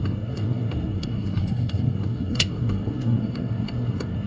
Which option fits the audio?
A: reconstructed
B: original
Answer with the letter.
A